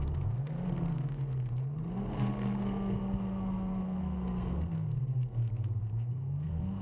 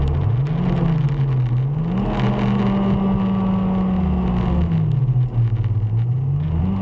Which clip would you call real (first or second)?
second